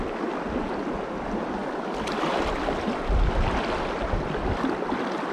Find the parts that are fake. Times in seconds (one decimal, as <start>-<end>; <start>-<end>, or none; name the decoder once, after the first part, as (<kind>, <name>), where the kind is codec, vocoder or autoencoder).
none